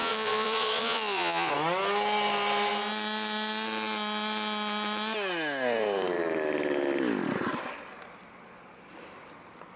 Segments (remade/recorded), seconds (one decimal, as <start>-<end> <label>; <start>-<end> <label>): 0.0-1.5 remade; 1.5-9.8 recorded